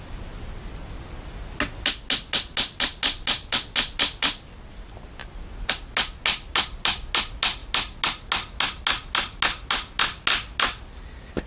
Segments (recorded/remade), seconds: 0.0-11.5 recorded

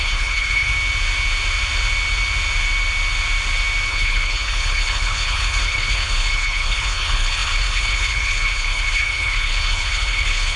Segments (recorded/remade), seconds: 0.0-0.7 remade; 0.7-3.9 recorded; 3.9-10.6 remade

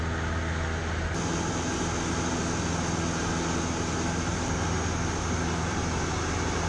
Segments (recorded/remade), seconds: 0.0-6.7 recorded

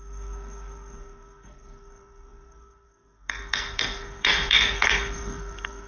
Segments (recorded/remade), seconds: 0.0-5.9 remade

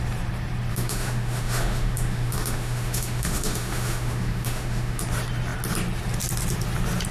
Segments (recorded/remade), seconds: 0.0-0.7 recorded; 0.7-5.0 remade; 5.0-7.1 recorded